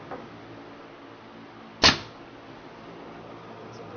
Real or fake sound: real